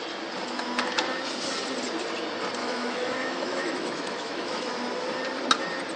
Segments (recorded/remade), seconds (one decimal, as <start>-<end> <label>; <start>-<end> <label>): 0.0-2.6 recorded; 2.6-4.7 remade; 4.7-6.0 recorded